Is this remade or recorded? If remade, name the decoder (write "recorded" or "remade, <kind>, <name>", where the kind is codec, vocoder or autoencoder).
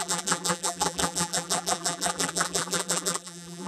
remade, vocoder, BigVGAN v2